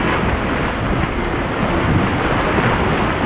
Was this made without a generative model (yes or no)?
yes